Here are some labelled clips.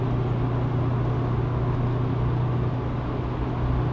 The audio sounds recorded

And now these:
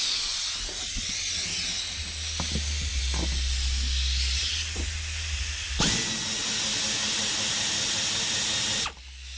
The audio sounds recorded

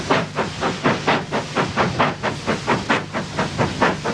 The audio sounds recorded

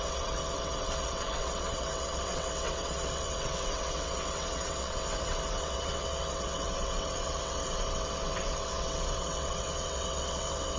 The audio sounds remade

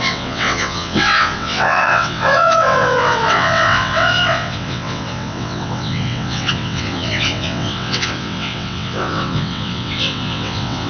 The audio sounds remade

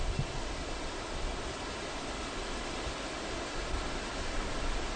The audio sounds recorded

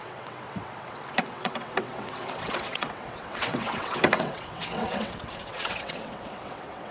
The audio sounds remade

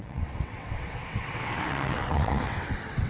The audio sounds remade